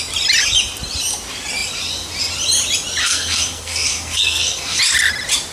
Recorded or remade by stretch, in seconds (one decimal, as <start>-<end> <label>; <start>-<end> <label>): 0.0-3.0 recorded; 3.0-4.8 remade; 4.8-5.5 recorded